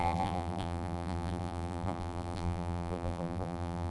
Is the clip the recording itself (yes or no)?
no